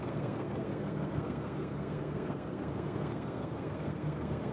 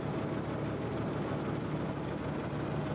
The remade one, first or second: first